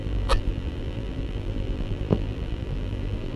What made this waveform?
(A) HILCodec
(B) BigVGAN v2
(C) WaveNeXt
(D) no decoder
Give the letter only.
B